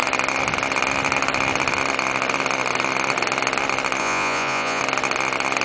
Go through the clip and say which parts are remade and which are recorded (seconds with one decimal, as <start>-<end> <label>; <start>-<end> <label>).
0.0-4.0 recorded; 4.0-4.8 remade; 4.8-5.6 recorded